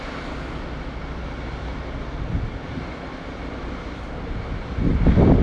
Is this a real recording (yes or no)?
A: yes